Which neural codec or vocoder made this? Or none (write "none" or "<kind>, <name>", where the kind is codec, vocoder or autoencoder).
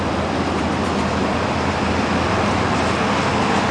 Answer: vocoder, BigVGAN v2